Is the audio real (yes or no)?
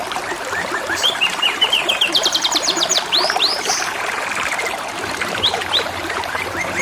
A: no